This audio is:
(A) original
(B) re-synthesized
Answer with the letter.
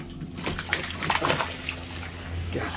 A